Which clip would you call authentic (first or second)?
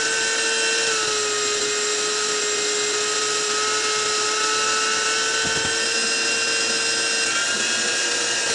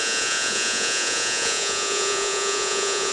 first